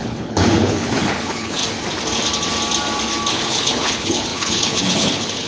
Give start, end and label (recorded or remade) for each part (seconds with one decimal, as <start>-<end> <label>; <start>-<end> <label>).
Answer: 0.0-1.6 remade; 1.6-3.3 recorded; 3.3-5.5 remade